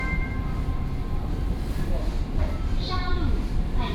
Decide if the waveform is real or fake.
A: fake